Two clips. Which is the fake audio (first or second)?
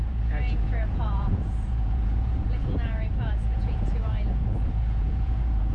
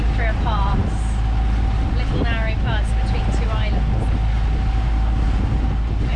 first